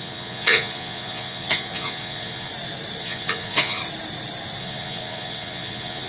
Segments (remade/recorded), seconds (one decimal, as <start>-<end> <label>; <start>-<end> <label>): 0.0-2.5 remade; 2.5-3.0 recorded; 3.0-3.8 remade; 3.8-4.6 recorded; 4.6-6.1 remade